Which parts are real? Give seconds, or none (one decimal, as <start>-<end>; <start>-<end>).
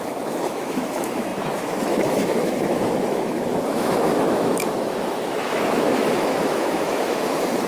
none